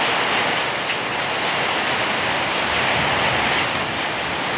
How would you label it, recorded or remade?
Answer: recorded